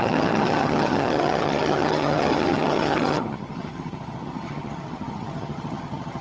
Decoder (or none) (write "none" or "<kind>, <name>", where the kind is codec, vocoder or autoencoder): vocoder, HiFi-GAN